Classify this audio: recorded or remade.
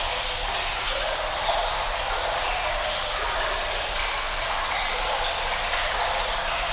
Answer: recorded